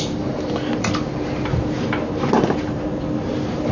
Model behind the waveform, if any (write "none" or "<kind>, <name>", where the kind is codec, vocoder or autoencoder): none